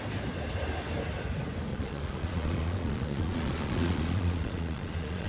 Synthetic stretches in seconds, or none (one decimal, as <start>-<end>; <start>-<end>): 1.7-5.3

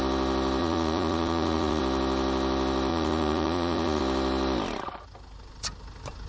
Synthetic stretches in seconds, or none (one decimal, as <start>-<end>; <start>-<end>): 0.6-1.8; 2.9-4.0

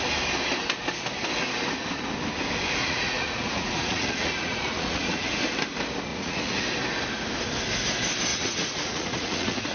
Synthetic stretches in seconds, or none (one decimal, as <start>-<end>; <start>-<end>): 2.8-5.4; 6.1-6.6; 8.3-9.7

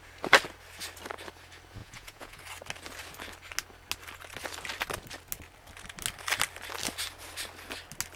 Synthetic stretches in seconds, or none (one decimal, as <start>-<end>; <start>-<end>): 1.8-2.4

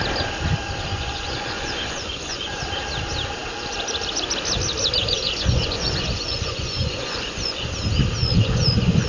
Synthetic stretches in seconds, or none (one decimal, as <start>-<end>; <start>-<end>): 0.9-2.6; 5.0-7.7; 8.2-9.1

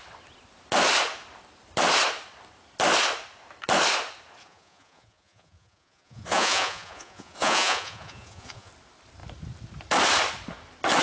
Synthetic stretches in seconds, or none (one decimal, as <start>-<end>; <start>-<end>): 4.4-8.7

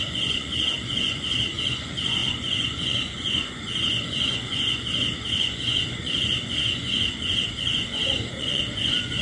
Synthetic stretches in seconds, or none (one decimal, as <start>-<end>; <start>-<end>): 0.0-9.2